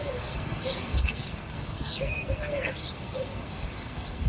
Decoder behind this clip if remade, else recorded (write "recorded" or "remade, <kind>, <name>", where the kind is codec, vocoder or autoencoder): remade, codec, SNAC